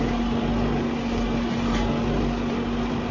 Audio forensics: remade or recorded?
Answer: recorded